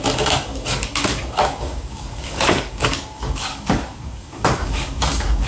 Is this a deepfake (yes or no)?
yes